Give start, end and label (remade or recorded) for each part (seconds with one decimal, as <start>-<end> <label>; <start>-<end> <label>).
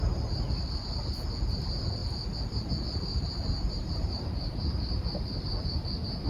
0.0-3.1 recorded; 3.1-4.9 remade; 4.9-6.3 recorded